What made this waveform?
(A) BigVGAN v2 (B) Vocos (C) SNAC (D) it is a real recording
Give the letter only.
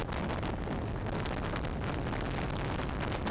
D